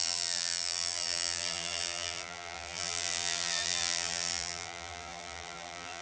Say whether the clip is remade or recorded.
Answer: remade